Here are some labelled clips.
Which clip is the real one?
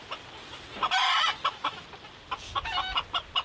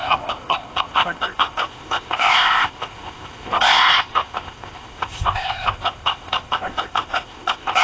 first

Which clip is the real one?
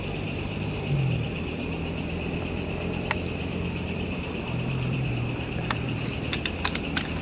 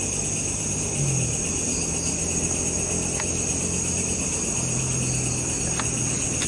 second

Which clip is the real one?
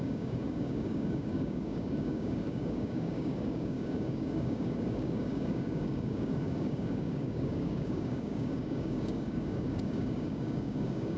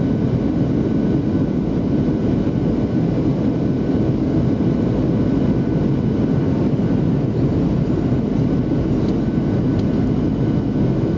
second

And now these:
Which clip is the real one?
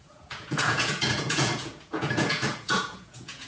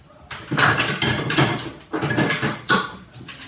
second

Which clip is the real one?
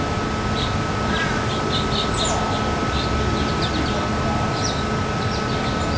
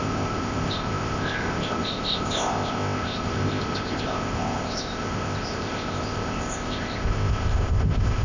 first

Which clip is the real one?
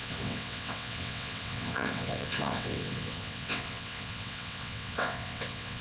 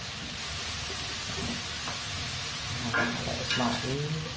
second